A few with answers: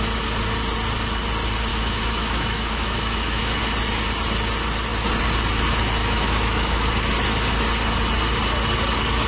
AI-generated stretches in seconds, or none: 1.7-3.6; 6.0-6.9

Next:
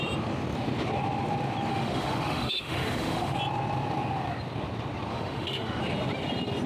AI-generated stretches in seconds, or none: 1.7-3.4; 5.1-5.8

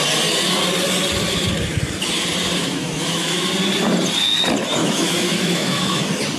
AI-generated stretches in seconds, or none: 2.6-3.5; 4.8-6.0